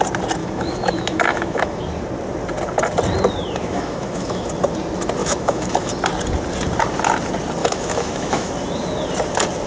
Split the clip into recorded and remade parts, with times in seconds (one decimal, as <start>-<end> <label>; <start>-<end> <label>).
0.0-0.4 recorded; 0.4-1.8 remade; 1.8-3.6 recorded; 3.6-4.5 remade; 4.5-5.2 recorded; 5.2-5.9 remade; 5.9-7.6 recorded; 7.6-8.5 remade; 8.5-9.7 recorded